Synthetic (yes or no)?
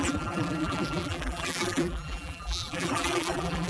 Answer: yes